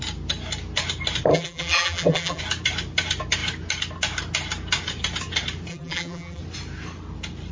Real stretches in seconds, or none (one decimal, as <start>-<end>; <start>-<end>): 0.0-1.3; 2.4-5.7; 6.4-7.5

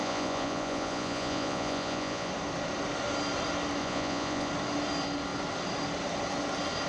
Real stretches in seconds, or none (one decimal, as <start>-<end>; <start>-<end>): 2.3-3.8; 4.5-6.9

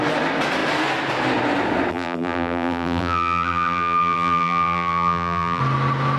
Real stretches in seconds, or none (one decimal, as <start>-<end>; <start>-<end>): 0.0-1.9; 5.6-6.2

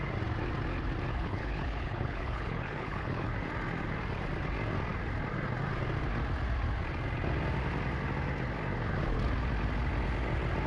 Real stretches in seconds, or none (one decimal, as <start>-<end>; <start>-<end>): 0.0-1.1; 3.3-10.7

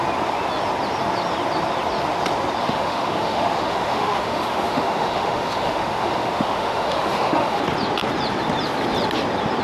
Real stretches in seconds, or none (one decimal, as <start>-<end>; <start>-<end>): 0.0-2.6; 7.6-9.6

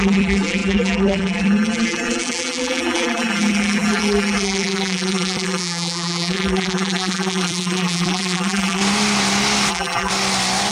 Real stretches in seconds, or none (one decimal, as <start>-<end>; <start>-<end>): 8.8-9.7; 10.1-10.7